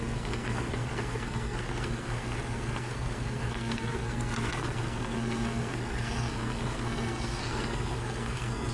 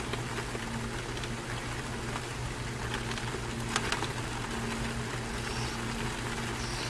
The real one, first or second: second